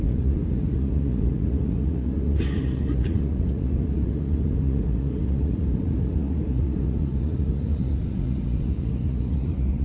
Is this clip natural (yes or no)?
no